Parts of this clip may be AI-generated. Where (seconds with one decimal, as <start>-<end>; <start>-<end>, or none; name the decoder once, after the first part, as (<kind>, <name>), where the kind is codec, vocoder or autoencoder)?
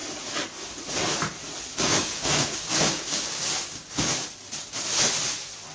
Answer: 1.7-4.1 (codec, DAC)